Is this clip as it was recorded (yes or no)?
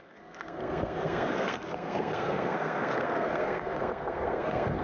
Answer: no